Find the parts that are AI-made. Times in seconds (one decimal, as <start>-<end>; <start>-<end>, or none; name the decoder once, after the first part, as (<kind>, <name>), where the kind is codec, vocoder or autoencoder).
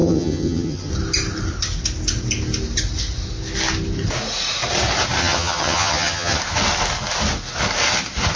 0.0-0.9 (vocoder, HiFi-GAN); 5.2-6.4